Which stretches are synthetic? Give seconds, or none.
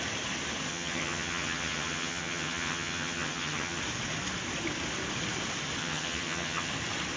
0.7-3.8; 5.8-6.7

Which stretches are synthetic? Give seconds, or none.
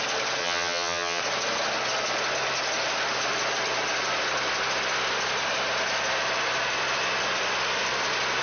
0.4-1.2